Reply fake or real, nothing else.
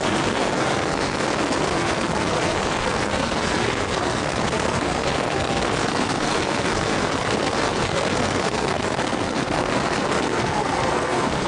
fake